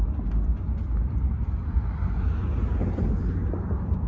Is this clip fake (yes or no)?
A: no